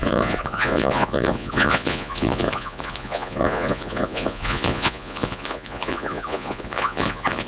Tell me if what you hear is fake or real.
fake